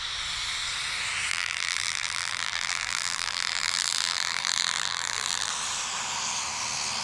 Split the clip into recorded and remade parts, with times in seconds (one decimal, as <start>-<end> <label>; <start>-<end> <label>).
0.0-1.3 recorded; 1.3-5.5 remade; 5.5-7.0 recorded